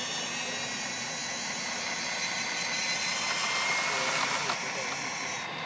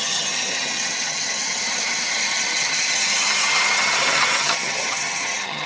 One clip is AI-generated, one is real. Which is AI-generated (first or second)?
second